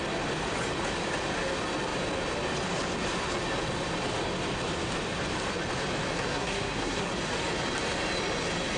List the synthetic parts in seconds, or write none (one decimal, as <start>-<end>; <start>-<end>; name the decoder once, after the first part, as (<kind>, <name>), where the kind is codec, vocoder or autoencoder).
6.1-7.1 (codec, SNAC)